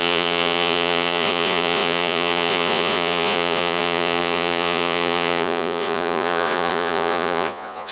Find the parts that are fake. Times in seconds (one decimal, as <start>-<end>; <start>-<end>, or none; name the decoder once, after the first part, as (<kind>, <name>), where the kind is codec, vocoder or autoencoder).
0.0-7.9 (vocoder, Vocos)